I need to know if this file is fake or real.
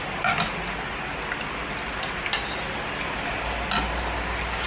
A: real